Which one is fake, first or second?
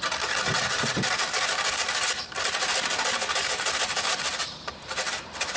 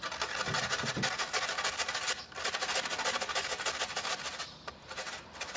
first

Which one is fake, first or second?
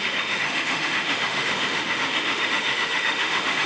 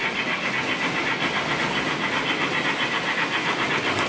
first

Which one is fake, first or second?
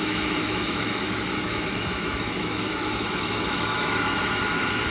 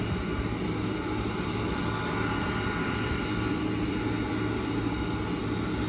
first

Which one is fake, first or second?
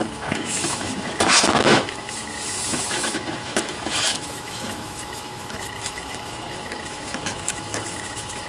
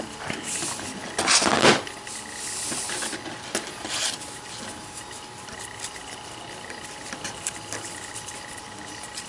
first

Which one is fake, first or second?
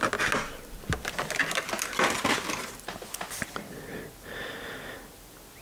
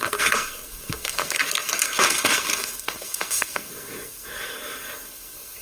second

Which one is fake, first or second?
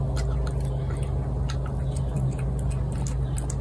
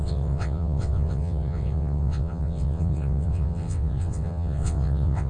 second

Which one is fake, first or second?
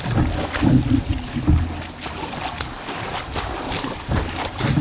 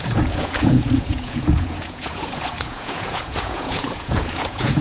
second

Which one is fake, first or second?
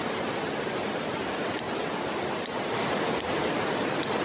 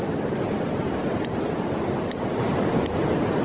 second